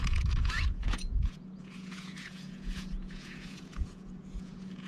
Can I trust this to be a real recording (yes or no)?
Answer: no